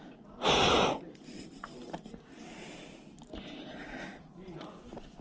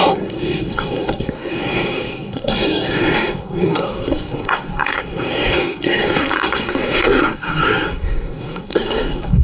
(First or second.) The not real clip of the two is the second